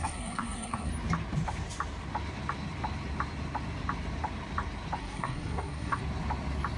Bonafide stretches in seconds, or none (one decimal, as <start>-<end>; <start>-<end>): 0.9-5.0; 6.0-6.8